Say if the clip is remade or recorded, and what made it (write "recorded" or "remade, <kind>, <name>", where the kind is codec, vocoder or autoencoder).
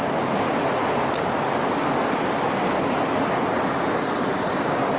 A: recorded